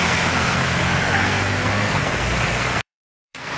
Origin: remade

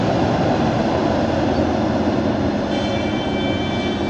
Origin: recorded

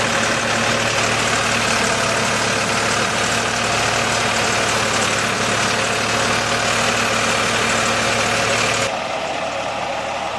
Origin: recorded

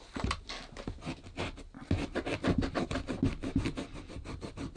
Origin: recorded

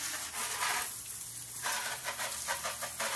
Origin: recorded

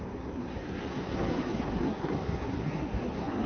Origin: remade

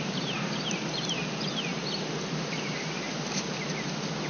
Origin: recorded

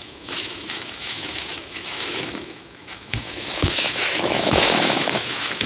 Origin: remade